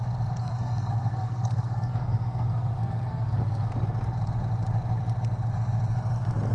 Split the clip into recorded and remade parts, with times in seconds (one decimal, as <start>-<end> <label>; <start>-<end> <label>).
0.0-0.4 recorded; 0.4-3.7 remade; 3.7-6.5 recorded